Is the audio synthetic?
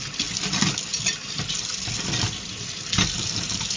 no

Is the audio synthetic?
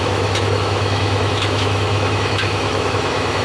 yes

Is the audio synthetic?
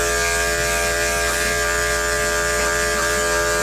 no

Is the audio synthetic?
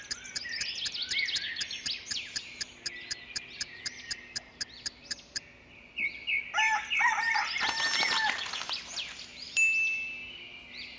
no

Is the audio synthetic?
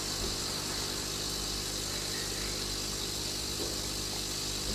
no